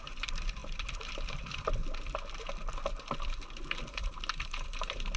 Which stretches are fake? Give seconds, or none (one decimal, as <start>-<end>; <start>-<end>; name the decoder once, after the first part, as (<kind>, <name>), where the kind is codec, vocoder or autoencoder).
0.0-1.8 (vocoder, BigVGAN v2); 3.9-5.2